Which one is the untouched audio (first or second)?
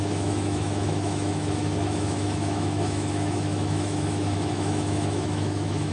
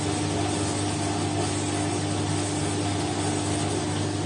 second